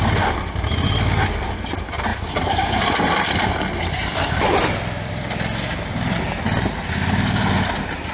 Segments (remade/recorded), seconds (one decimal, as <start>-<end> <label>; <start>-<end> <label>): 0.0-2.1 recorded; 2.1-5.1 remade; 5.1-8.1 recorded